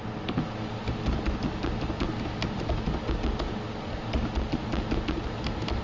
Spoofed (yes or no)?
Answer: no